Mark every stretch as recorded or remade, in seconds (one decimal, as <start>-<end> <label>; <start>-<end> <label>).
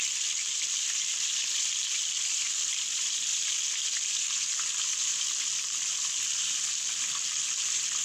0.0-5.1 remade; 5.1-7.6 recorded; 7.6-8.0 remade